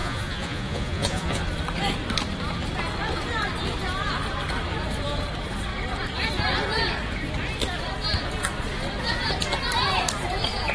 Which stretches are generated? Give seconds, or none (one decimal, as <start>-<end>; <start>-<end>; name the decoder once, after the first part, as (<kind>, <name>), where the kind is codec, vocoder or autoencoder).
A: 0.0-1.4 (vocoder, Vocos)